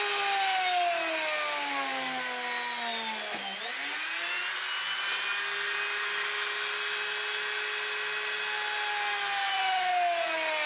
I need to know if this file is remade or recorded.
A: recorded